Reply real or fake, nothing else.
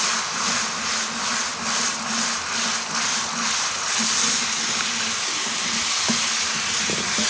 real